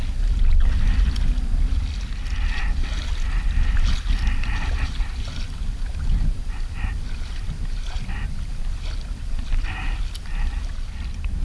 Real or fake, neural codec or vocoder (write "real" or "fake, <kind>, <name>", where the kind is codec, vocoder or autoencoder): real